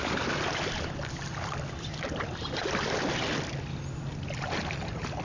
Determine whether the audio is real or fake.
real